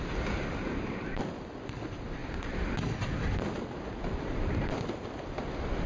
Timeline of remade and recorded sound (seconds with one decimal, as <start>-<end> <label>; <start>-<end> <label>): 0.0-5.9 recorded